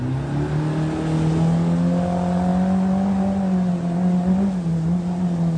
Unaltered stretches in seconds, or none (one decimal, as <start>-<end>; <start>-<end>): 0.0-5.6